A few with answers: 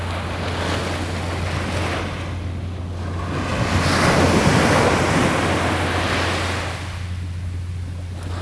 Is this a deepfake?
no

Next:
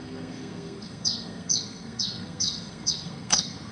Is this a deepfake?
yes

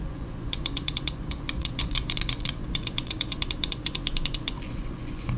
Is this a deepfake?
yes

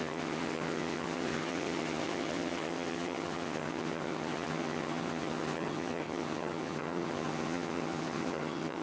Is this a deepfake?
yes